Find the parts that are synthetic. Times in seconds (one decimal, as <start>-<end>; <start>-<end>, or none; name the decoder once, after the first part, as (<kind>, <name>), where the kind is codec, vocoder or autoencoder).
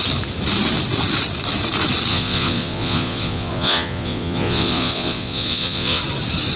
2.1-6.0 (vocoder, Vocos)